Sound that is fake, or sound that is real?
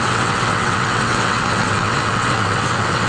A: fake